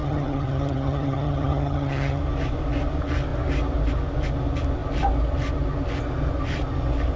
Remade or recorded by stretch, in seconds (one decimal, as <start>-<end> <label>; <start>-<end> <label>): 0.0-2.2 remade; 2.2-7.2 recorded